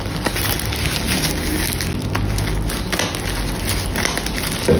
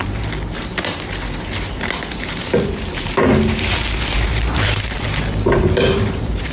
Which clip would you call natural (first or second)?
first